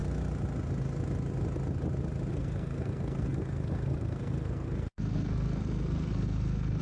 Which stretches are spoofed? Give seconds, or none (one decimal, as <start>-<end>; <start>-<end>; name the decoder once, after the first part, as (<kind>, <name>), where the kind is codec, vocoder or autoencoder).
2.3-6.8 (codec, SNAC)